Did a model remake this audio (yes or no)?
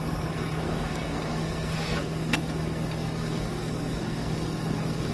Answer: yes